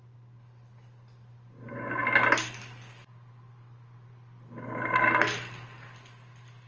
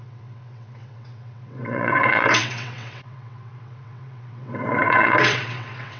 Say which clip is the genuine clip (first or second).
first